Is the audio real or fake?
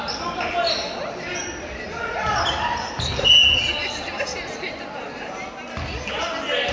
real